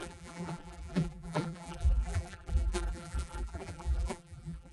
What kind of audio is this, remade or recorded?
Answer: remade